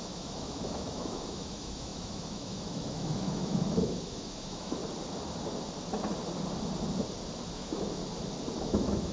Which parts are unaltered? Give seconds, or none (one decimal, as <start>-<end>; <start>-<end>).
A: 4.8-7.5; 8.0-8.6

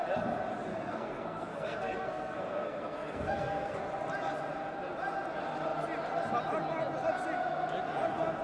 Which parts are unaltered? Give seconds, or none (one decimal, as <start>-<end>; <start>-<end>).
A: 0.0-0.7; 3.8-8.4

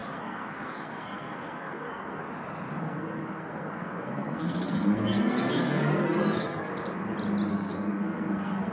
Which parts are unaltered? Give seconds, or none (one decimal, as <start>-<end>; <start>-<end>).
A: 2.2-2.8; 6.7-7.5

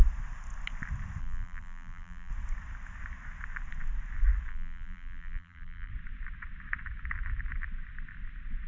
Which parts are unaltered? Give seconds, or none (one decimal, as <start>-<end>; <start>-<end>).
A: 0.0-1.2; 2.3-4.5; 5.9-8.7

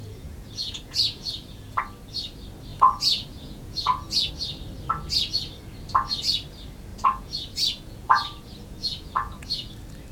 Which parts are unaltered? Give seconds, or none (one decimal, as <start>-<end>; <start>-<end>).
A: 1.8-2.7; 4.3-6.9; 9.7-10.1

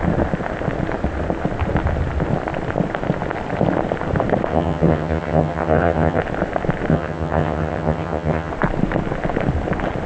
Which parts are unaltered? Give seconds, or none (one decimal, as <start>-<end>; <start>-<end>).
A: 0.0-4.5; 6.2-6.9; 8.5-10.1

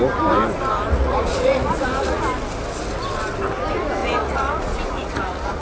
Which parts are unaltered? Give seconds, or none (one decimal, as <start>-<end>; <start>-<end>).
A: 0.0-0.9; 2.2-4.0